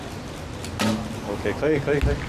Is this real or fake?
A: real